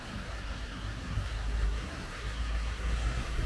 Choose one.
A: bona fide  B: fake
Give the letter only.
B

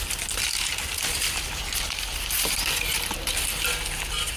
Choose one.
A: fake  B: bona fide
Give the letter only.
B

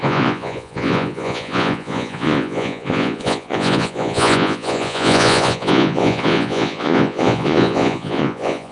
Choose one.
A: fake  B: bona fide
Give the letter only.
A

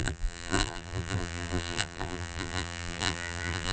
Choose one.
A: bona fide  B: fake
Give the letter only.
B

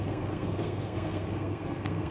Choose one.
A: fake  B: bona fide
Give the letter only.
A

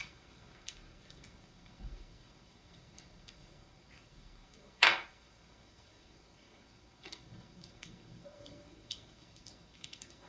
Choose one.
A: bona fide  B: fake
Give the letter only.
B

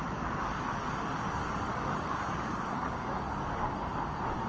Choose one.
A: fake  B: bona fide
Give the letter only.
A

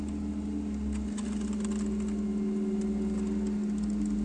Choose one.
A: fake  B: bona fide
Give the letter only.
B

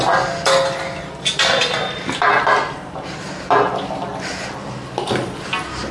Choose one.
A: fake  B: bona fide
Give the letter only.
B